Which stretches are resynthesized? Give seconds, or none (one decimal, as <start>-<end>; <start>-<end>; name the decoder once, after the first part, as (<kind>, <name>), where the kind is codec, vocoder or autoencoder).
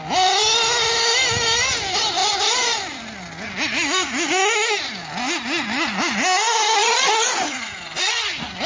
6.8-8.2 (vocoder, Vocos)